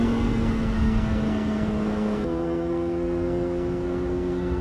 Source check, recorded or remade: remade